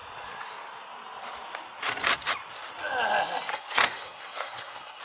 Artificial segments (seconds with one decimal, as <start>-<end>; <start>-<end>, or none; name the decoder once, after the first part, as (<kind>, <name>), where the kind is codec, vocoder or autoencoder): 3.5-5.0 (codec, SNAC)